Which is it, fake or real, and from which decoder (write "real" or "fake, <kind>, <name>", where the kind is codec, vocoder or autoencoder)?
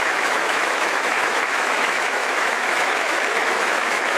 fake, autoencoder, DAC-VAE